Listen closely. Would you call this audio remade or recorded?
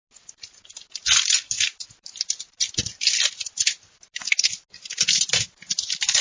recorded